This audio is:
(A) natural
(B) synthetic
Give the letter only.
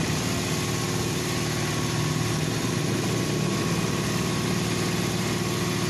A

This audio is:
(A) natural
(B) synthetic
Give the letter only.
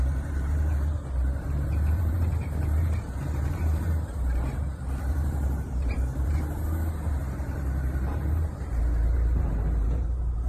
B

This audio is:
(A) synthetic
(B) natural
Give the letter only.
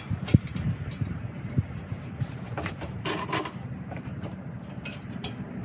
A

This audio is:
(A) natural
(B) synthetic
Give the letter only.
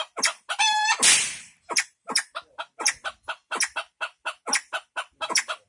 B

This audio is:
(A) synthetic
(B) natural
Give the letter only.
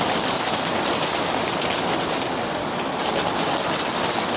B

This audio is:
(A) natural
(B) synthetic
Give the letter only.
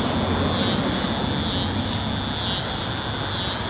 A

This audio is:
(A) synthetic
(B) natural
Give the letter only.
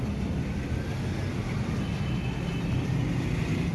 A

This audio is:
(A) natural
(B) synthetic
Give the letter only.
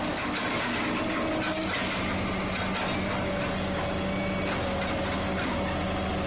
A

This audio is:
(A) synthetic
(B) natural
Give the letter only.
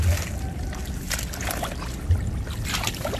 B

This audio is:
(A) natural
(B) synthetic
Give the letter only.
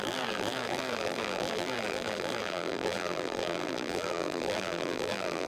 B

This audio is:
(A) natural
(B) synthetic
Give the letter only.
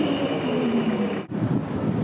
B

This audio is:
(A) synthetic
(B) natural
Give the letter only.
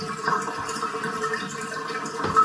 A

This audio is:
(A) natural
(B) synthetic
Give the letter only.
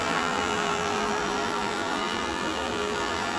B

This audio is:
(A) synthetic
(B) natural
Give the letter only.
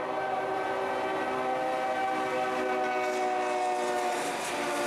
B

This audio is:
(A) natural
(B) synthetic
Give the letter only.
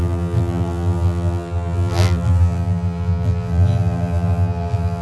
B